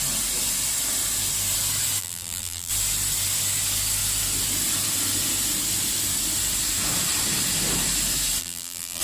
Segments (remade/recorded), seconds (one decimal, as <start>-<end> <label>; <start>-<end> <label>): 0.0-2.0 recorded; 2.0-2.7 remade; 2.7-8.4 recorded; 8.4-9.0 remade